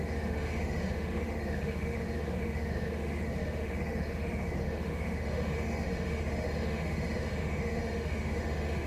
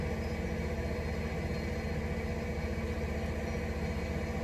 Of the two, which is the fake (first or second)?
first